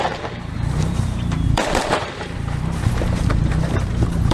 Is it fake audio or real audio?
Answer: fake